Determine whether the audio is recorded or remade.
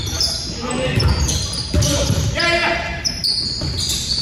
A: recorded